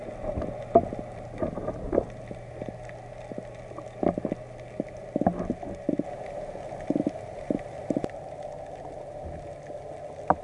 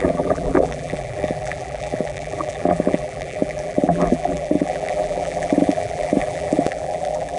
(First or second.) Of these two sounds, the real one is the first